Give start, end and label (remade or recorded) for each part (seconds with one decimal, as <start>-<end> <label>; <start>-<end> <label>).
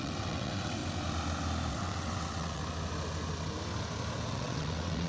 0.0-0.8 remade; 0.8-1.7 recorded; 1.7-2.6 remade; 2.6-4.3 recorded; 4.3-5.1 remade